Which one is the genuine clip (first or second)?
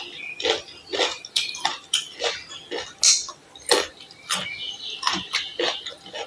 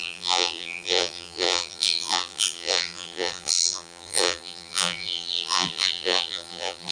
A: first